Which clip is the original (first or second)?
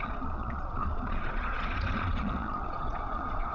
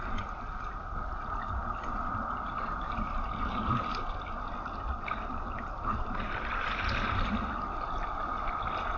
second